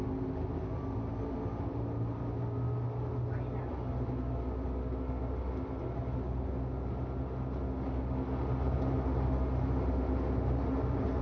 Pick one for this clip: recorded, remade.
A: recorded